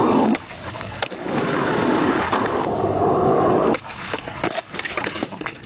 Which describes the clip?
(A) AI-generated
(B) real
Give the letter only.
A